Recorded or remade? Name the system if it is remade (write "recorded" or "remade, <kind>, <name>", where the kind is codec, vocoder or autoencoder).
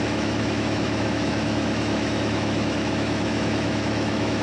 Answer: remade, autoencoder, DAC-VAE